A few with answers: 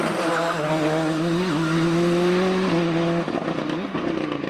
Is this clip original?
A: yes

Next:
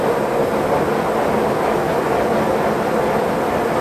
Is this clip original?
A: yes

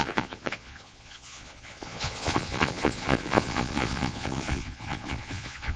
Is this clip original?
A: no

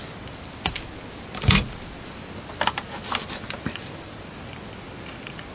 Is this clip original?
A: yes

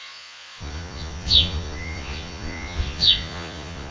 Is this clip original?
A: no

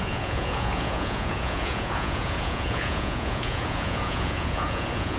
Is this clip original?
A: no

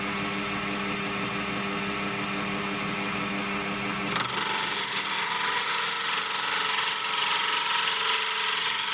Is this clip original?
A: yes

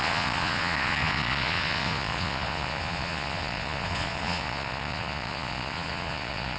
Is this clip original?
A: no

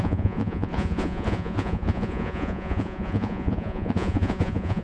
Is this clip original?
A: no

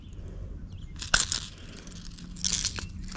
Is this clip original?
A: yes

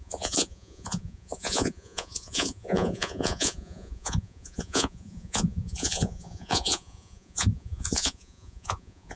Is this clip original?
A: no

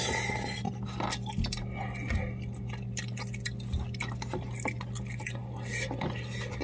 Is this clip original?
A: yes